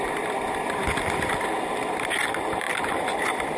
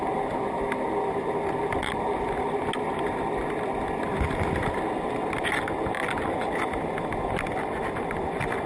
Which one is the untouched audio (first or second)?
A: second